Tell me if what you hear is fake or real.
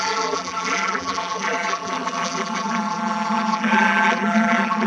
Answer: fake